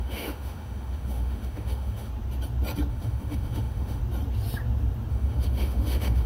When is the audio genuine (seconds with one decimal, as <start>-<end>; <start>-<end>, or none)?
2.1-2.9; 4.0-5.1